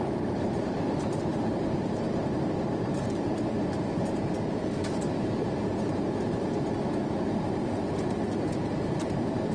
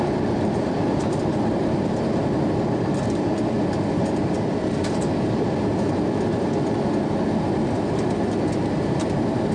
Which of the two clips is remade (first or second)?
first